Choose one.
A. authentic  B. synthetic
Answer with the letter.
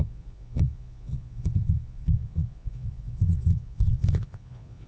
B